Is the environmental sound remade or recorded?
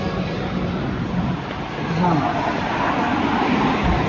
recorded